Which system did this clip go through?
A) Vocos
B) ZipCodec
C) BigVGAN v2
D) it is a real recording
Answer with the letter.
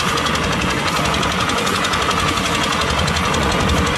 A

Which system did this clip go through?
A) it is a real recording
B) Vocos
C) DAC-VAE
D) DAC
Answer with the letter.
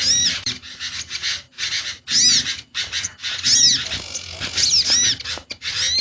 A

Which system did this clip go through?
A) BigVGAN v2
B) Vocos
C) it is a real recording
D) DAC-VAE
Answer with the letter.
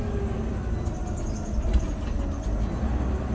C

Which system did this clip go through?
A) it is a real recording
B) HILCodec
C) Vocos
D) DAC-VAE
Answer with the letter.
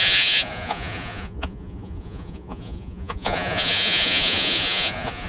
C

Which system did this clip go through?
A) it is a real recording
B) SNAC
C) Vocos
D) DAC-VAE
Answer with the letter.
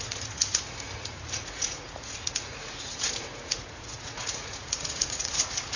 C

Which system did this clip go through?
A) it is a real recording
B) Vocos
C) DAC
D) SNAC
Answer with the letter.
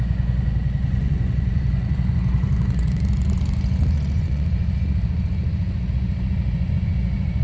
B